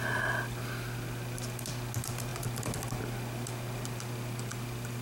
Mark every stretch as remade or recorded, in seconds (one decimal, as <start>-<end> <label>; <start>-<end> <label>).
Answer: 0.0-5.0 recorded